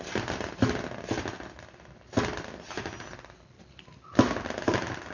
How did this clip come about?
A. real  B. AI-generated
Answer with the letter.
A